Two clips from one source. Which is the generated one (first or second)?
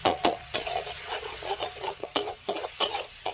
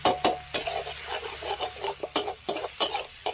first